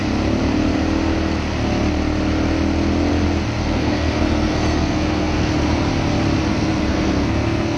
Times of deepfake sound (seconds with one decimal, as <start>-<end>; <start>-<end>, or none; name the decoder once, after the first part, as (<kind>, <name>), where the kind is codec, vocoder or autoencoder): 3.6-5.5 (codec, SNAC); 6.5-7.8